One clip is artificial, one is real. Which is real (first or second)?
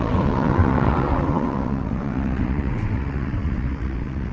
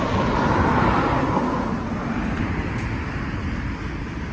second